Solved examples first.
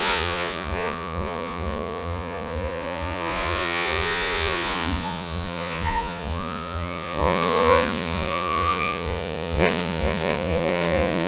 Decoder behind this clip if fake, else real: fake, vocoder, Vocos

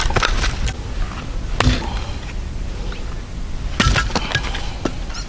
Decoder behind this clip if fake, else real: real